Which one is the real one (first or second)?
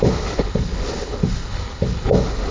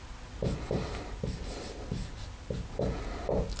second